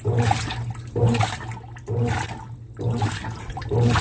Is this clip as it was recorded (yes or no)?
yes